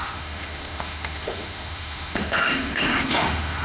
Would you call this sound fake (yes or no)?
yes